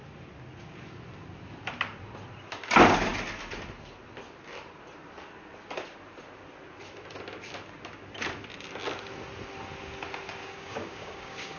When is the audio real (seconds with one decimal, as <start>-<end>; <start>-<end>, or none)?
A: 0.0-10.4